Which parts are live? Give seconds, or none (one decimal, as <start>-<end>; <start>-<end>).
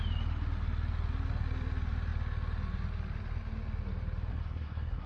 0.0-4.3